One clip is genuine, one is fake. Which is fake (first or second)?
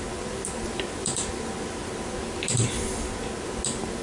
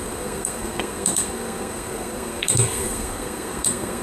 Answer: second